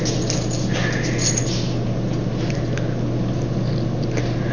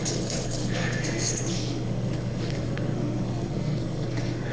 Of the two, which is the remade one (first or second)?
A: second